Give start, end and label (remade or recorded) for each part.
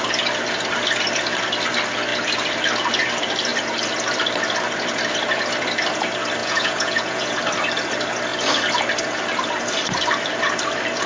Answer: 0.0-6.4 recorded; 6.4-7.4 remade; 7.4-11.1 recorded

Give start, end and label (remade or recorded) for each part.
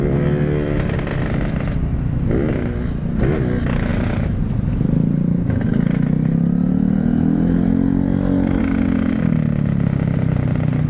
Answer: 0.0-10.9 recorded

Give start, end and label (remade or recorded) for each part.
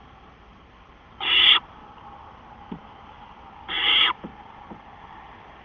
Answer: 0.0-1.8 remade; 1.8-2.8 recorded; 2.8-4.3 remade; 4.3-5.0 recorded; 5.0-5.6 remade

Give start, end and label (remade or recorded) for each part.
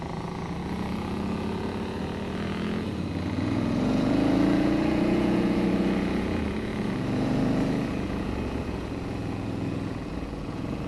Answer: 0.0-10.9 remade